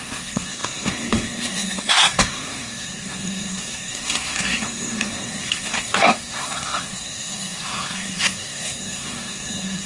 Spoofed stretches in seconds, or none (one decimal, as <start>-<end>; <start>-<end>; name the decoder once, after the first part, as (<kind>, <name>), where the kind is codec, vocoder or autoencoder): 0.0-9.9 (codec, SNAC)

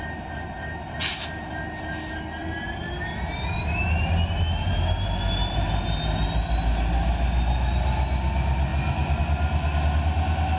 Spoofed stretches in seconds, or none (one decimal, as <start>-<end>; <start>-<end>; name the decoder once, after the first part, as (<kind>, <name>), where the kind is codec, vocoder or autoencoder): none

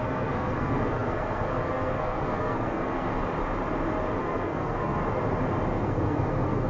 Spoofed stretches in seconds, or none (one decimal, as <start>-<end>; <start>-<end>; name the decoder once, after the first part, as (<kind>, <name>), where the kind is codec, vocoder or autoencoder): 0.0-3.1 (codec, SNAC); 4.2-5.0; 5.8-6.7

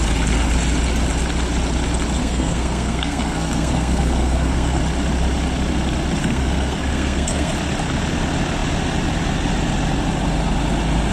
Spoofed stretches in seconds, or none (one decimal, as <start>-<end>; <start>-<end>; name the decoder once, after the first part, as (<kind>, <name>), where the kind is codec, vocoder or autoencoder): 2.2-4.8 (codec, SNAC); 6.2-7.5

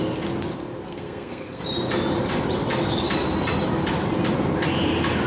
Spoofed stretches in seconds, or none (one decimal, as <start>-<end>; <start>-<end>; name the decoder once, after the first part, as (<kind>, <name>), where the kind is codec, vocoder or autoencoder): 0.9-1.6 (codec, SNAC)